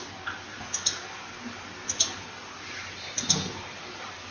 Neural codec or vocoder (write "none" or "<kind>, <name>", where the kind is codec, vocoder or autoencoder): none